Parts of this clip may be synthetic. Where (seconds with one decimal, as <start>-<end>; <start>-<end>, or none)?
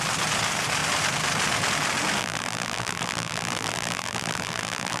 2.2-5.0